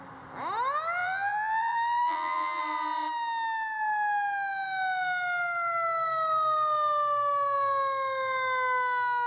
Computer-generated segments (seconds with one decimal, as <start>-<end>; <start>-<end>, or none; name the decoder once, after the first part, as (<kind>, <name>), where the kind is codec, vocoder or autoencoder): 1.0-2.6 (vocoder, BigVGAN v2)

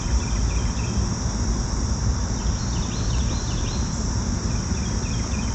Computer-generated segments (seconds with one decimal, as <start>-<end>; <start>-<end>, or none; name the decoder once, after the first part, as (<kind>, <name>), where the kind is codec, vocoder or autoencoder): 2.0-2.6 (vocoder, BigVGAN v2)

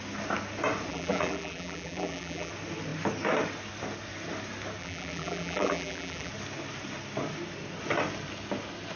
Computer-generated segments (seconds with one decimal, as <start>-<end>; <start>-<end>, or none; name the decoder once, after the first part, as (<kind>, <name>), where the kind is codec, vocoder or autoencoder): 0.9-2.5 (vocoder, BigVGAN v2); 4.8-6.3